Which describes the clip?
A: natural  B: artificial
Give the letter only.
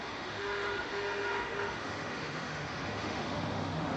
B